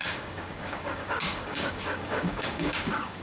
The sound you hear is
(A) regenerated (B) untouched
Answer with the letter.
A